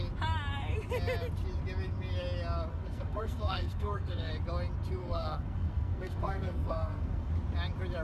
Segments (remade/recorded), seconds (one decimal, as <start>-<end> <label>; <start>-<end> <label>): 0.0-2.7 recorded; 2.7-4.3 remade; 4.3-5.0 recorded; 5.0-7.3 remade; 7.3-8.0 recorded